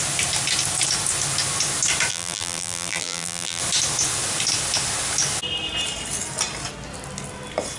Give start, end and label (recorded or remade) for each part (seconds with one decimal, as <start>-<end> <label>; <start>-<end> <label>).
0.0-2.1 recorded; 2.1-3.6 remade; 3.6-7.8 recorded